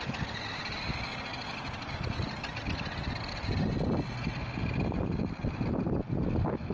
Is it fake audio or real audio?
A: real